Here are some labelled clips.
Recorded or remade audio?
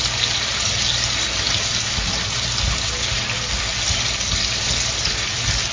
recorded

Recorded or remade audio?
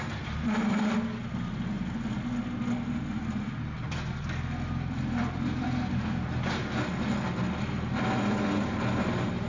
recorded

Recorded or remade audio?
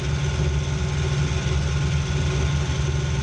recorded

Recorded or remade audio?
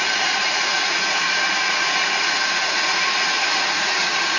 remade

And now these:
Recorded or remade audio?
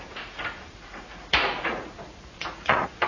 remade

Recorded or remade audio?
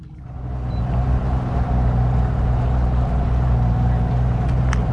recorded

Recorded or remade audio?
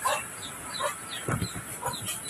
recorded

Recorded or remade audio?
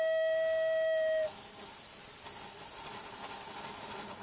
recorded